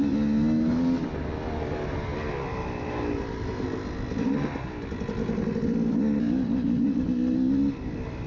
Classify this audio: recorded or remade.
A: recorded